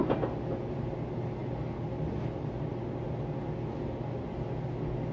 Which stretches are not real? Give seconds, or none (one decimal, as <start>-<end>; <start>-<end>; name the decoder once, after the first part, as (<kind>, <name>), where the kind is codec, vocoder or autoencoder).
none

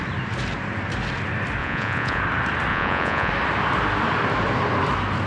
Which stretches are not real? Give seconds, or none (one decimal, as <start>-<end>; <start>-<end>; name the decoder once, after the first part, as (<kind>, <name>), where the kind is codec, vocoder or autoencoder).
1.6-2.2 (vocoder, Vocos); 2.7-3.3

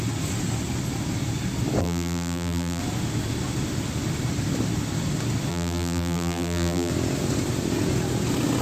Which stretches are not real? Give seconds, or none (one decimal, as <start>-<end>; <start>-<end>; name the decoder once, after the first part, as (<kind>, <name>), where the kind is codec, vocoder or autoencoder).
1.8-2.8 (vocoder, BigVGAN v2); 5.5-6.9

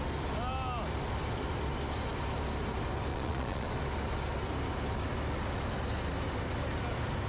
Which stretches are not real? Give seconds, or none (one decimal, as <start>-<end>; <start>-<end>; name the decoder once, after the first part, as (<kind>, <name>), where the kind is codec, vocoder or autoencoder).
3.1-3.7 (vocoder, Vocos)

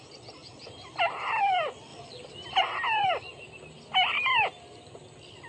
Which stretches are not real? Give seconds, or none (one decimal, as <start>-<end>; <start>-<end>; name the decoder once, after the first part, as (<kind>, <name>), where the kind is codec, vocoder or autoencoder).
0.4-1.4 (vocoder, BigVGAN v2); 1.9-2.6; 3.0-4.1